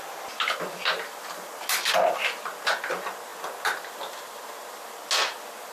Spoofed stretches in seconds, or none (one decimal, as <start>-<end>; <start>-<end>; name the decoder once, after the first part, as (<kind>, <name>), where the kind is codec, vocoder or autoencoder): none